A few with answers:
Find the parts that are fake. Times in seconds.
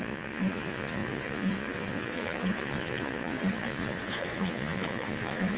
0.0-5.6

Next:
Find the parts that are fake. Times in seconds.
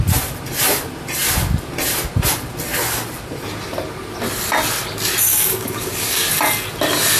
5.3-6.3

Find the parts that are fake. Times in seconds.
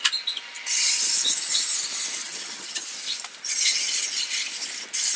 2.2-2.9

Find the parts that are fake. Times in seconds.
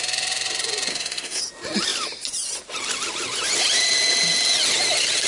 0.9-1.4